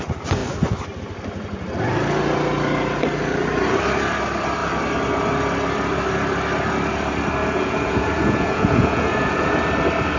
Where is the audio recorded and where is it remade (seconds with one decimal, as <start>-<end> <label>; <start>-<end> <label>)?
0.0-7.4 recorded; 7.4-9.6 remade; 9.6-10.2 recorded